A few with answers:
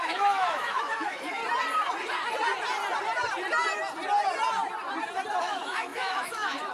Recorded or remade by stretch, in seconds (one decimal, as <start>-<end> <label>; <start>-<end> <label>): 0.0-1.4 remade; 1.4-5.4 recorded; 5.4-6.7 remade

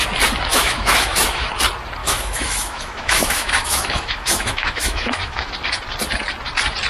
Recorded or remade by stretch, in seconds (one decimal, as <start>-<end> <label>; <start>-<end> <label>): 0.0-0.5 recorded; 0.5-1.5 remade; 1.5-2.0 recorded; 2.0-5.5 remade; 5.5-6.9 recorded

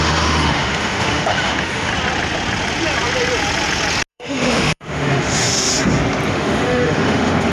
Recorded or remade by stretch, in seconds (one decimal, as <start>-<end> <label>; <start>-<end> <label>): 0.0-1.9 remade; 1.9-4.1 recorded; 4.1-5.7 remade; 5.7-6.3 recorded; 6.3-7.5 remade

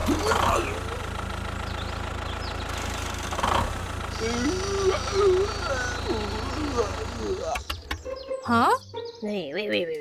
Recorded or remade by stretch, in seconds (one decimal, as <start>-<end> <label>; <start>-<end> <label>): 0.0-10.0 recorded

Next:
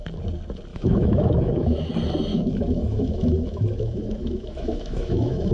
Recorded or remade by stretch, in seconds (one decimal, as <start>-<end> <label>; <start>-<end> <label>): 0.0-0.7 recorded; 0.7-1.9 remade; 1.9-2.3 recorded; 2.3-5.5 remade